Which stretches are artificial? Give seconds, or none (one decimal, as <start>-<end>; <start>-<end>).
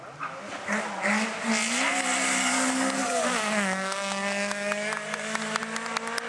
2.2-5.6